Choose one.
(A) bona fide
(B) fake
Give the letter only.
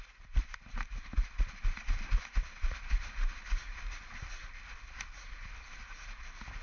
A